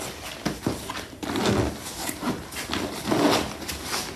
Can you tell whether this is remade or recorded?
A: recorded